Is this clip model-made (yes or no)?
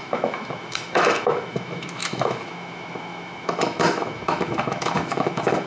yes